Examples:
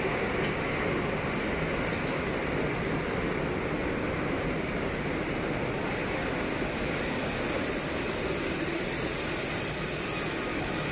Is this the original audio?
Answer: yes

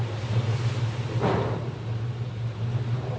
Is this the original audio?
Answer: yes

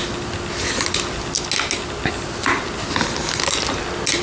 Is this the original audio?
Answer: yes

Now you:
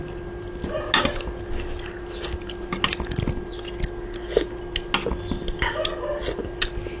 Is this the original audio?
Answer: yes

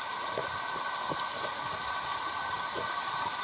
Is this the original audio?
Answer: yes